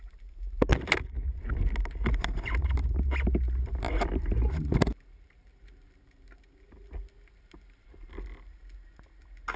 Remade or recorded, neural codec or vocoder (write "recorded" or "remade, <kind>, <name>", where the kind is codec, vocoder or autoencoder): recorded